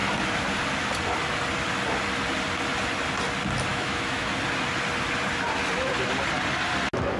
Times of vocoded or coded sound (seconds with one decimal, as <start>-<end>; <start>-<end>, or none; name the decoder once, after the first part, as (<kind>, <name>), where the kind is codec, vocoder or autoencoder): 3.7-4.3 (autoencoder, DAC-VAE)